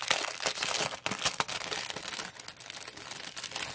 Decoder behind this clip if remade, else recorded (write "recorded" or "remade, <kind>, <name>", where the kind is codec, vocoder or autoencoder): recorded